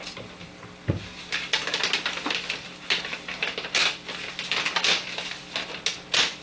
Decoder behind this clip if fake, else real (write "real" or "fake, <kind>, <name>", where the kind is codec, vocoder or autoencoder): real